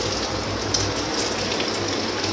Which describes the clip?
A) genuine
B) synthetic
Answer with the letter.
A